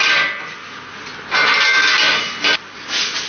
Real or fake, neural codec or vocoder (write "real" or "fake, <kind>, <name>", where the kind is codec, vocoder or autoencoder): real